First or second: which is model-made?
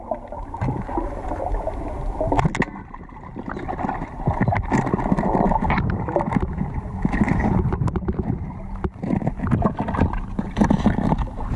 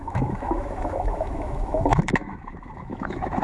second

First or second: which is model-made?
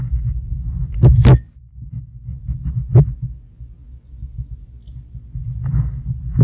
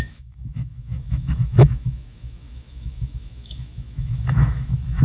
second